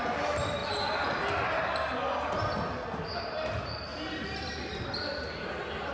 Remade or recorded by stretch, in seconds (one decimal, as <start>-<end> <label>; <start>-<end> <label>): 0.0-3.9 recorded; 3.9-4.8 remade; 4.8-5.9 recorded